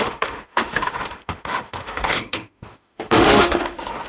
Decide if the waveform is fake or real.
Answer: fake